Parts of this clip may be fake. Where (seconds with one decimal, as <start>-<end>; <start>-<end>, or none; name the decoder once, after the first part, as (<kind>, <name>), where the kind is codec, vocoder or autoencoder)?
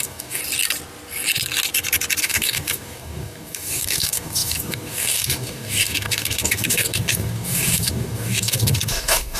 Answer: 0.0-0.4 (codec, DAC); 2.2-9.4